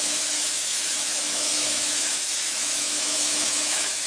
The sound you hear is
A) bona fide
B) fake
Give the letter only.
B